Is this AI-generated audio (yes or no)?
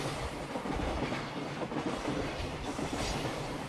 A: no